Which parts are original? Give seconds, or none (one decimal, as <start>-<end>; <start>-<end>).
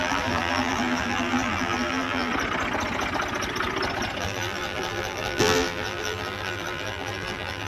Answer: 2.3-4.2